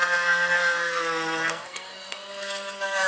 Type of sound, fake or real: fake